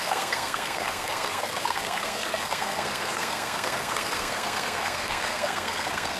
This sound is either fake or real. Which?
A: fake